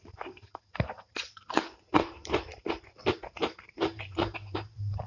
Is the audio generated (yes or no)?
yes